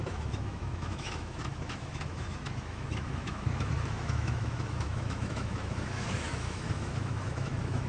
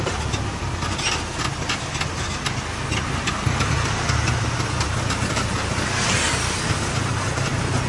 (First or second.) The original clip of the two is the second